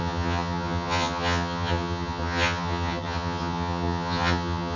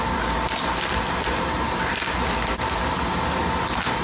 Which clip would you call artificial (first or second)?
first